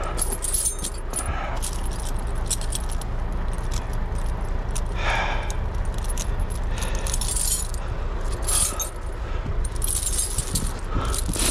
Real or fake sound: real